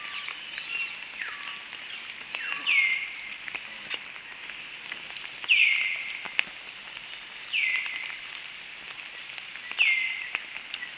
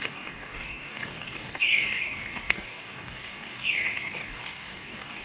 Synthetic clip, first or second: second